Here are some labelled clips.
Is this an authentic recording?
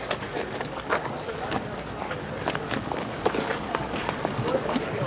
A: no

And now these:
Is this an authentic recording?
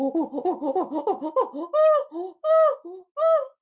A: yes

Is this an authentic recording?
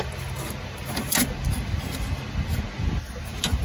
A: yes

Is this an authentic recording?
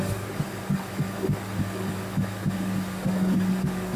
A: no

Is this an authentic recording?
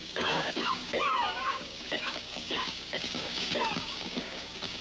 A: no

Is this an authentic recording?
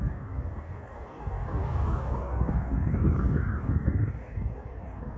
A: no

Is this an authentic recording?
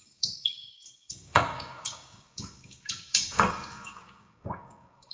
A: no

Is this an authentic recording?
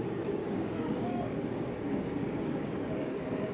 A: no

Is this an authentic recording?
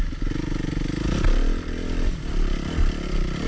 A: yes